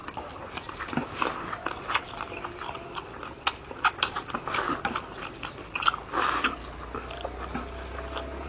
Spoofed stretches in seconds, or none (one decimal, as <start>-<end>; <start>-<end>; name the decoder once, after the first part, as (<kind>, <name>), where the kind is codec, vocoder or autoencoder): none